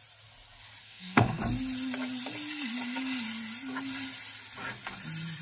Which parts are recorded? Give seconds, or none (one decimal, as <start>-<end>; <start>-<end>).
0.0-0.8; 1.4-5.4